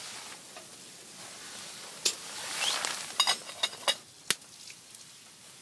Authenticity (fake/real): real